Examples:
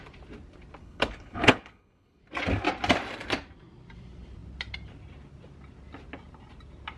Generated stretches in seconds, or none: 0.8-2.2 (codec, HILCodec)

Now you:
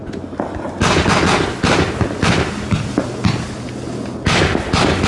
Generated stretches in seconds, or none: none

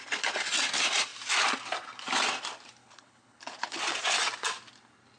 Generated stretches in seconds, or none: 2.8-3.8 (codec, HILCodec)